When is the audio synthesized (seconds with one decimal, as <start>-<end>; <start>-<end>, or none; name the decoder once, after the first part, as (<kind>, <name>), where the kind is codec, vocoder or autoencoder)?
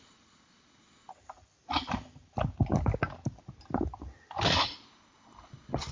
0.0-1.1 (codec, HILCodec); 4.6-5.9